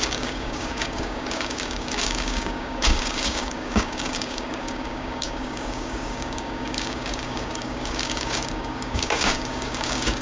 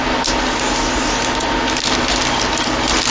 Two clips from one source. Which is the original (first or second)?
second